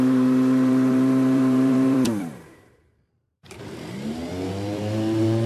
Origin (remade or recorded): remade